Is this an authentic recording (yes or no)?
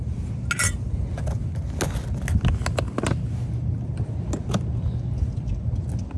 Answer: yes